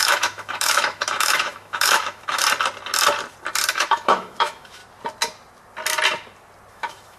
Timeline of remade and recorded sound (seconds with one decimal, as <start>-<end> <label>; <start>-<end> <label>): 0.0-2.4 remade; 2.4-3.7 recorded; 3.7-4.8 remade; 4.8-6.7 recorded; 6.7-7.2 remade